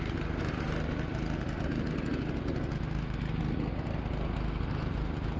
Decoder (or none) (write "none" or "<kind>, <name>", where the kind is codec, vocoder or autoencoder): none